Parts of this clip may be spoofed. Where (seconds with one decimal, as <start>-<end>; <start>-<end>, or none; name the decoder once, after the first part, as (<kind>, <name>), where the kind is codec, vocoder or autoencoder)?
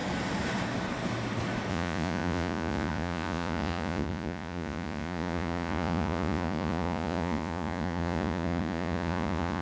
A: 1.7-9.6 (vocoder, Vocos)